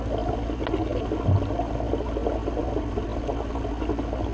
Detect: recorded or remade recorded